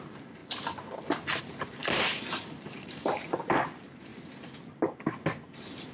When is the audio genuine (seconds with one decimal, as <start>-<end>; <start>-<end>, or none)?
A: 0.4-1.4; 4.1-5.4